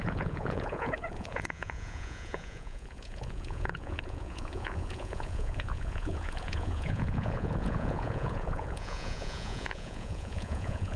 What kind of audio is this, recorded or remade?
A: remade